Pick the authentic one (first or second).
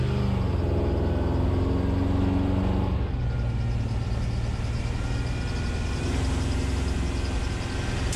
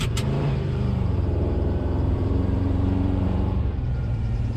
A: first